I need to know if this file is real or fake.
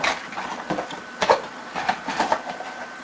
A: real